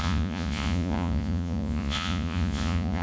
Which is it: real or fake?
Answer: fake